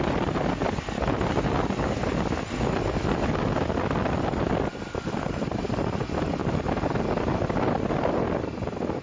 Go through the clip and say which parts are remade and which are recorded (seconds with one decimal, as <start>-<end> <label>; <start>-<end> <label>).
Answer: 0.0-9.0 recorded